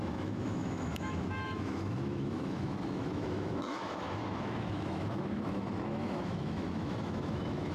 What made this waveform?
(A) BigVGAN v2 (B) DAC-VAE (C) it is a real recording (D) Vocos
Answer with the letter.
B